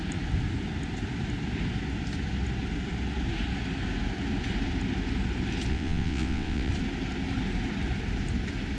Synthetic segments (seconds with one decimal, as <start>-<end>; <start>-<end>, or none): 5.7-6.7